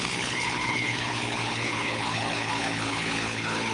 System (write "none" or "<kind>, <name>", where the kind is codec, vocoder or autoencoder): codec, HILCodec